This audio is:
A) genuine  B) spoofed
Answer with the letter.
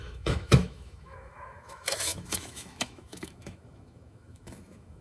B